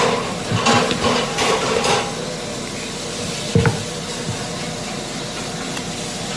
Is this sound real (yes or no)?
yes